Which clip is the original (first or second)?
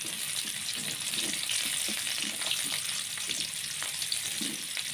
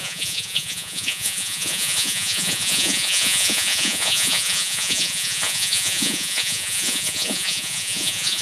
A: first